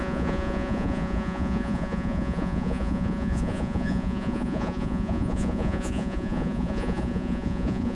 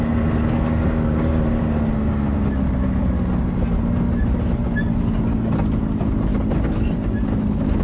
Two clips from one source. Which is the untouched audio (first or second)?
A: second